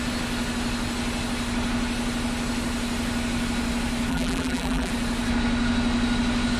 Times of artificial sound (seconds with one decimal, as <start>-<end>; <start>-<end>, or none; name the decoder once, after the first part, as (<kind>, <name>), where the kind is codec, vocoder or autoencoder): 4.1-4.9 (vocoder, BigVGAN v2)